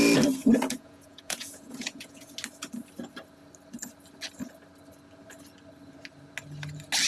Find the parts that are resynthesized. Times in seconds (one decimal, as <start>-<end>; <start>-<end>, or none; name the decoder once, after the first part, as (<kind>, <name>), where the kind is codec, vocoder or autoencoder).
0.4-2.3 (vocoder, Vocos)